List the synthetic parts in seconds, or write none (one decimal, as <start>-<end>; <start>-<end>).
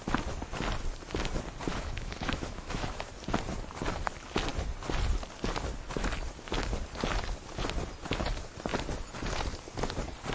1.7-3.1